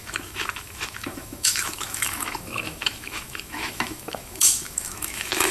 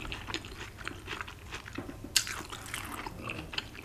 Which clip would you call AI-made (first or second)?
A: first